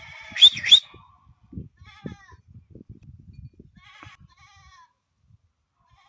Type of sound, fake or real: real